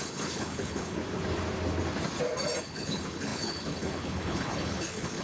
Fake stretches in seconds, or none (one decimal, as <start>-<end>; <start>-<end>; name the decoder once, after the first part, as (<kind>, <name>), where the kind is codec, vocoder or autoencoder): 0.0-1.0 (codec, HILCodec); 2.6-5.2